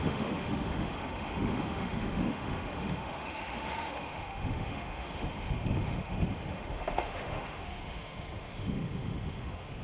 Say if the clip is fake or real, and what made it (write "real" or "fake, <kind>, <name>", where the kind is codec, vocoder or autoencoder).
fake, autoencoder, DAC-VAE